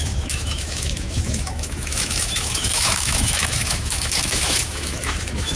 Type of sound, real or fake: fake